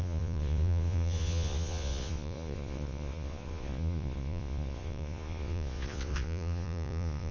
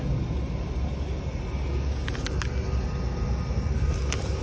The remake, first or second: first